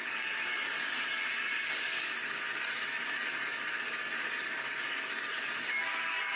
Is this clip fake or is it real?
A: fake